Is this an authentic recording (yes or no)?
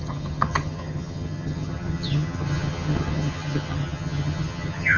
no